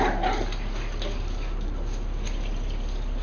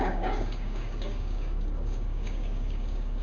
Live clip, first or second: first